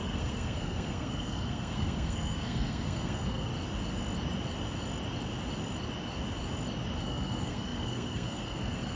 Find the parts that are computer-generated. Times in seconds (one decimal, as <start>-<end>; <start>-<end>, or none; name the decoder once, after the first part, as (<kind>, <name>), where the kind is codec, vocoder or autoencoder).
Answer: 0.0-3.5 (codec, SNAC); 7.0-9.0